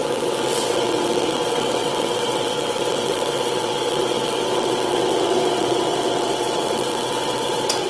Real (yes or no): no